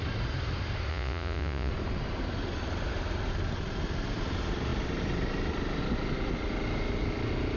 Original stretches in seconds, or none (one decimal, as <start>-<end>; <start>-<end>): 0.0-0.9; 1.7-7.6

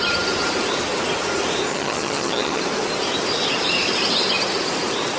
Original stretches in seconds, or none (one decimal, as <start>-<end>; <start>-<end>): 0.0-1.7; 2.6-5.2

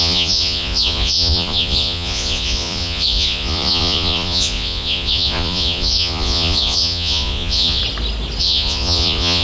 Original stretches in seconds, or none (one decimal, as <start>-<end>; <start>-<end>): 7.8-8.4

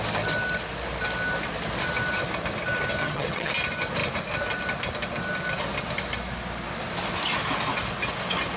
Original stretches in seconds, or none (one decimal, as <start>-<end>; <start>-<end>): 0.0-3.0; 3.5-8.6